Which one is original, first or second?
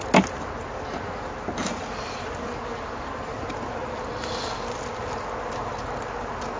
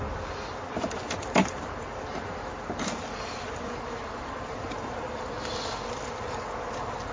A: first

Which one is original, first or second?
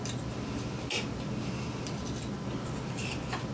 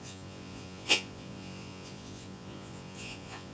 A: first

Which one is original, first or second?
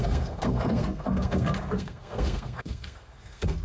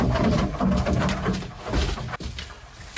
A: second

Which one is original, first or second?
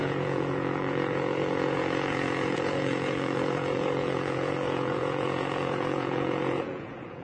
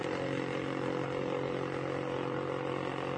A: second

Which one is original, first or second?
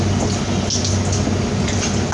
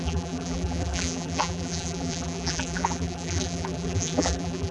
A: first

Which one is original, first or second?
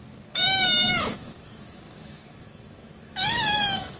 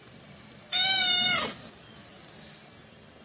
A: second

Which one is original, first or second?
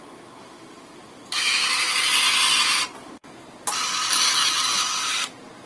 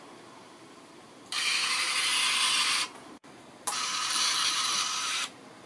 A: first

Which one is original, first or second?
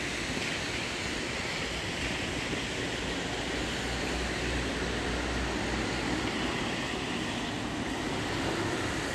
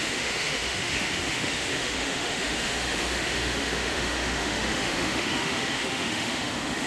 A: first